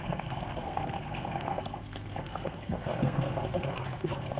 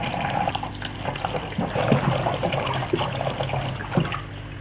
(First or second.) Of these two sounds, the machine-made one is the first